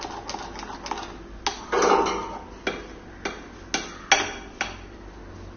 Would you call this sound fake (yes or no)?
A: no